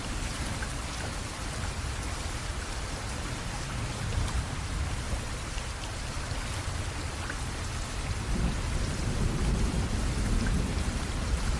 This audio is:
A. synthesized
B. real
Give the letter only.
A